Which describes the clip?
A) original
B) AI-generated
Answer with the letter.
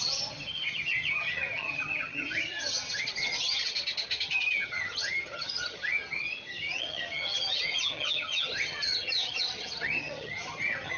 B